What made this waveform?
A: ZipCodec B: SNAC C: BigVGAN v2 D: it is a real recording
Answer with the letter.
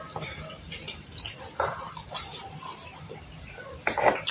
D